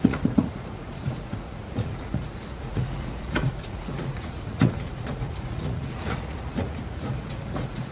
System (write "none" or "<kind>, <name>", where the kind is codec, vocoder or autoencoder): vocoder, Vocos